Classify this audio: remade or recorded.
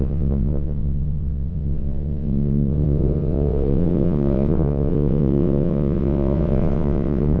remade